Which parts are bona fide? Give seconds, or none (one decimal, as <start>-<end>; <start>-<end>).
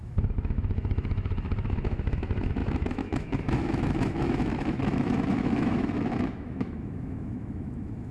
none